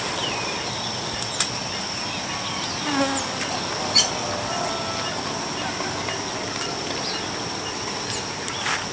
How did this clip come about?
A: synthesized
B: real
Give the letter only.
B